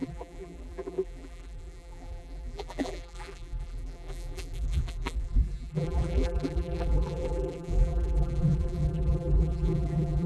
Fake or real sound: fake